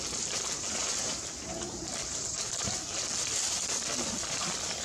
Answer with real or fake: real